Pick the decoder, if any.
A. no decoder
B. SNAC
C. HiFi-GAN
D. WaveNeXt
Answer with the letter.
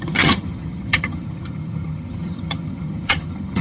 C